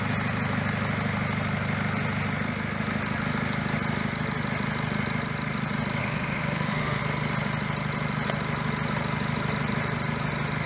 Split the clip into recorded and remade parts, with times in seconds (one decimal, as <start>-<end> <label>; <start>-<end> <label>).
0.0-6.0 recorded; 6.0-7.0 remade; 7.0-10.7 recorded